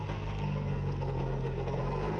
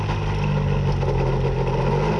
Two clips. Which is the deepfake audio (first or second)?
first